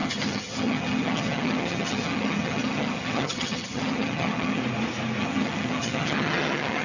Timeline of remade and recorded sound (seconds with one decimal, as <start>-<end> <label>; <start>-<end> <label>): 0.0-4.6 remade; 4.6-5.2 recorded; 5.2-6.8 remade